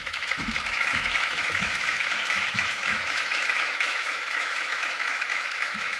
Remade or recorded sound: remade